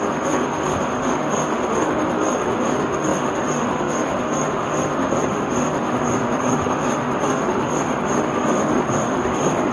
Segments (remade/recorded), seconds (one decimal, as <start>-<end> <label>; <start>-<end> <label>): 0.0-9.7 remade